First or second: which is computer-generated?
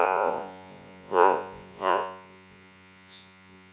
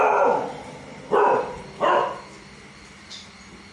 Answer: first